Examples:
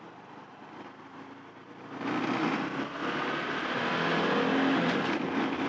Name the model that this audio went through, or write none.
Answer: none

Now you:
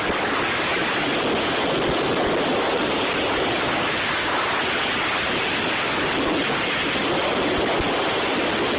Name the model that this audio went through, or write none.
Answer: none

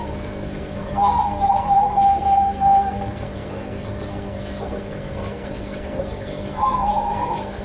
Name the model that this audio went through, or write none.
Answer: codec, SNAC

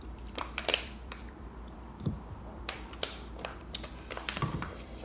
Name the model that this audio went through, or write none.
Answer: vocoder, BigVGAN v2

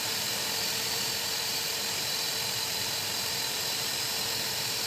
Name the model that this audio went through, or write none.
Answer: vocoder, BigVGAN v2